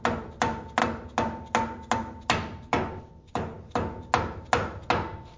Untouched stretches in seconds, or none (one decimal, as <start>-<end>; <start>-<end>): 0.0-5.4